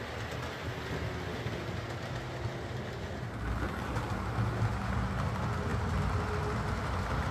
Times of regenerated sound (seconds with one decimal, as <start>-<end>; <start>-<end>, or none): none